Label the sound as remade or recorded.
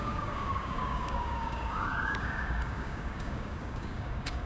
remade